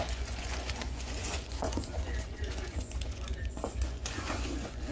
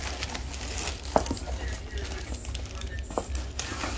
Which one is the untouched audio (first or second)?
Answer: second